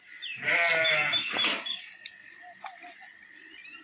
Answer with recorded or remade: recorded